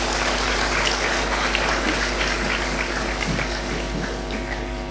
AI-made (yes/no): yes